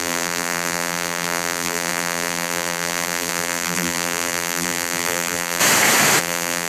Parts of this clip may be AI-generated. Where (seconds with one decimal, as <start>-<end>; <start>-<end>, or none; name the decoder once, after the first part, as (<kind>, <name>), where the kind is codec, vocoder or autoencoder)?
0.0-5.6 (vocoder, BigVGAN v2); 6.2-6.7